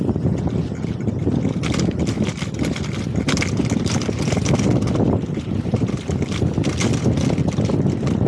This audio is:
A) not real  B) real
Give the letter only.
B